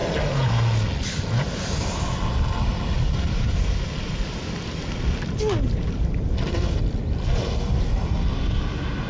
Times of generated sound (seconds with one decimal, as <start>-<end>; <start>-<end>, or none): none

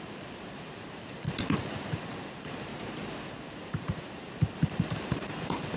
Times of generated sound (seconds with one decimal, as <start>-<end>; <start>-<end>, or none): 0.0-2.7; 3.5-5.8

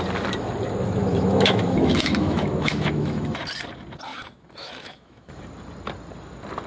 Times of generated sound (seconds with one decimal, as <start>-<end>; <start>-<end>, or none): 1.1-3.4; 4.1-5.4

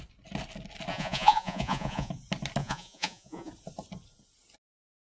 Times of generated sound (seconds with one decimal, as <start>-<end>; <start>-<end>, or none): 0.9-2.1; 2.6-3.5